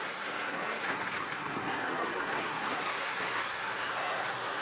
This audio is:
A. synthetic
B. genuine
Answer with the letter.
A